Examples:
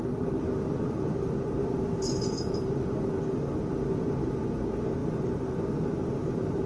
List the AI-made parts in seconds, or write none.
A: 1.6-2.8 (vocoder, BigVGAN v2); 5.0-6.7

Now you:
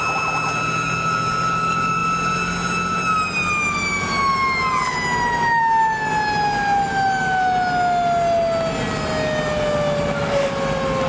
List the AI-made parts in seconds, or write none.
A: none

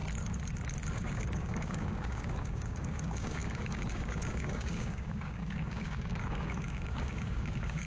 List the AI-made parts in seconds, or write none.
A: 0.9-7.9 (codec, DAC)

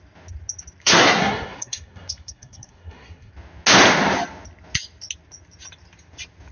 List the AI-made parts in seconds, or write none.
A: 0.8-3.3 (codec, SNAC)

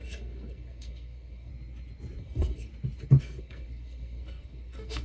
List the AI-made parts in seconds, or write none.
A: 0.0-1.5 (codec, SNAC); 2.2-2.7; 3.2-5.0